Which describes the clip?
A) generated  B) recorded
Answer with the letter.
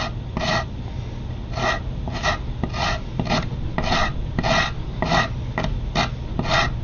B